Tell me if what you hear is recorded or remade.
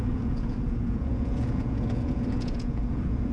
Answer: remade